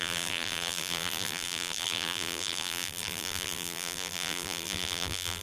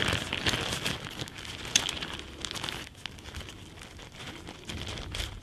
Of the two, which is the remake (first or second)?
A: first